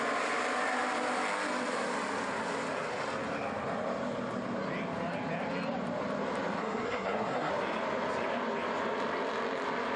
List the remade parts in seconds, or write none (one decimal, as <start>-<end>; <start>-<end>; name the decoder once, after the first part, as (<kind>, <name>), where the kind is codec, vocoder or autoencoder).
6.6-7.5 (codec, SNAC)